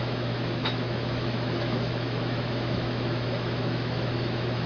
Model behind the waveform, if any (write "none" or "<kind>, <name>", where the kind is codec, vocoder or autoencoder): autoencoder, DAC-VAE